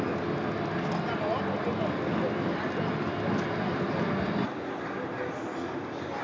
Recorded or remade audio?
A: recorded